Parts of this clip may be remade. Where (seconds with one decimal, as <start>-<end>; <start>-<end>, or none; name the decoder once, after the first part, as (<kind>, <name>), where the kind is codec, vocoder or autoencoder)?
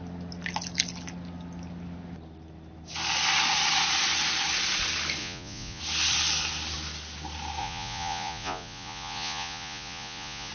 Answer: 5.2-5.8 (vocoder, Vocos); 7.6-10.5